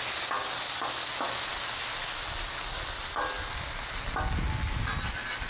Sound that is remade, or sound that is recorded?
recorded